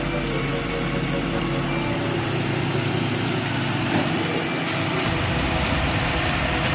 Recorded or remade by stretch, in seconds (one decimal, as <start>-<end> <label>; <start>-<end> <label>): 0.0-6.7 recorded